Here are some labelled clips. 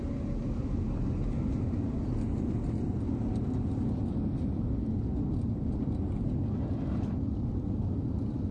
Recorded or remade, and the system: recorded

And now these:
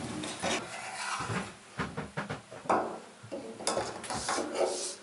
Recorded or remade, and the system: recorded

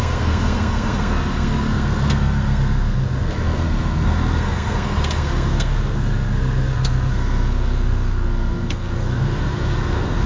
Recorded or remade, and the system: remade, codec, SNAC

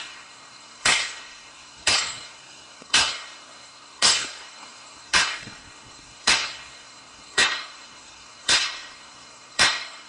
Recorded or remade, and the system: remade, codec, SNAC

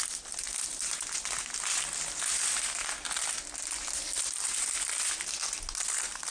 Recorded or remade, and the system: recorded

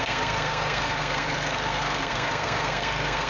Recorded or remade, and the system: remade, codec, SNAC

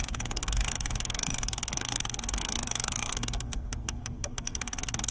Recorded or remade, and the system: remade, codec, SNAC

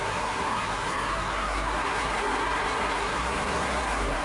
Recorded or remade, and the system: remade, codec, SNAC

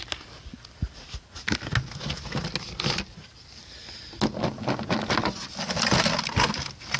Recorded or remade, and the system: recorded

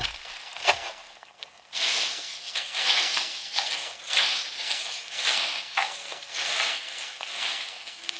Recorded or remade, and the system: remade, codec, SNAC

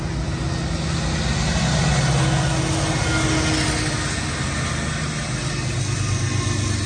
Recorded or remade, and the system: recorded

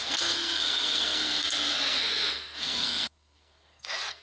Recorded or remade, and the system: remade, codec, SNAC